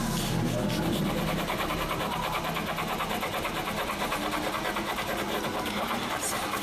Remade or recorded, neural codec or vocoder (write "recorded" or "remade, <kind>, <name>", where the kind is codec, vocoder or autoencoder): recorded